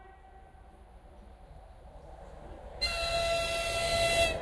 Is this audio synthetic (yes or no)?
no